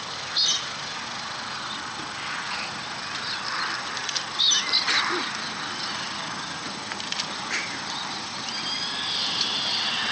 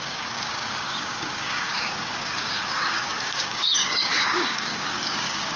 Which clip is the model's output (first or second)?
second